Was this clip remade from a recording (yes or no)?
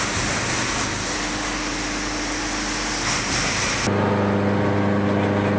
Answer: no